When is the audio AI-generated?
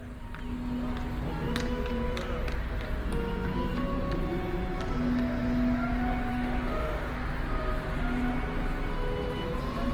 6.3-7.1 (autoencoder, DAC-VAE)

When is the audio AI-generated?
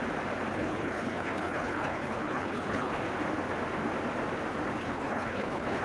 0.5-3.0 (codec, HILCodec); 4.8-5.8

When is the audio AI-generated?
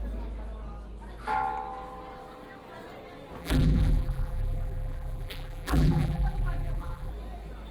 3.4-7.1 (vocoder, BigVGAN v2)